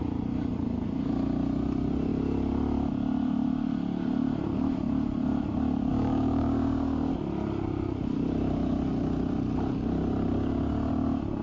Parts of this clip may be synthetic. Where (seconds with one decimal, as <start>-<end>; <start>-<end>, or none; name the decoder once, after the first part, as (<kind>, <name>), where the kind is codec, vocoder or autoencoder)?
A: 5.9-7.1 (codec, DAC); 10.3-10.9